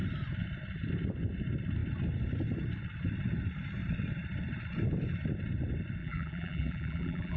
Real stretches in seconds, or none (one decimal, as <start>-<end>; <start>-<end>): 0.0-6.0